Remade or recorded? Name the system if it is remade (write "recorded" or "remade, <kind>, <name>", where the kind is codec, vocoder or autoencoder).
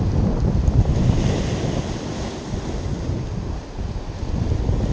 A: recorded